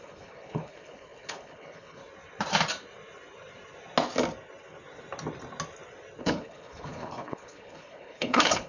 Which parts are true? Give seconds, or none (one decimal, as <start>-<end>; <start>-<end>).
2.0-6.2